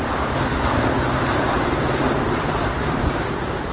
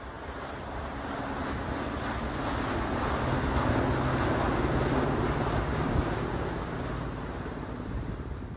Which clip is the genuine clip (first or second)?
second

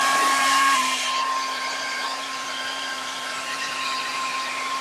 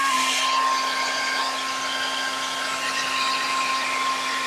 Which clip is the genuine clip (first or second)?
second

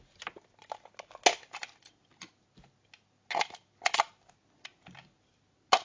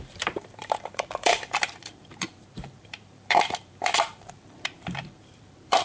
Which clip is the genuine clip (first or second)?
first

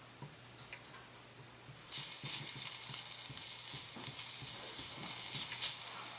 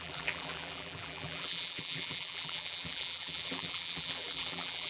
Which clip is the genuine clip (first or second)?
first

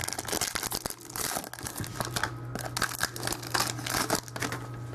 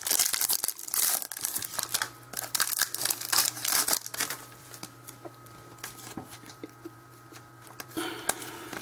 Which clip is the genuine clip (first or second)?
first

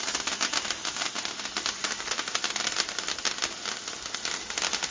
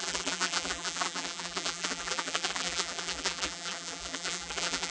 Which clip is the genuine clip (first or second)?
first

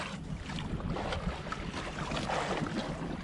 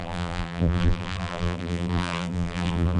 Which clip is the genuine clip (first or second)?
first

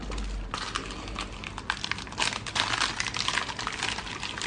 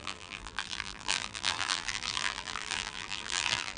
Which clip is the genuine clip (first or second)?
first